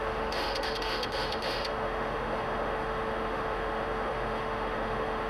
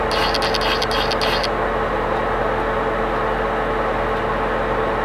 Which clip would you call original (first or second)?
second